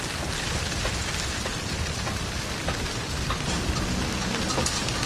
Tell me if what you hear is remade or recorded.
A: recorded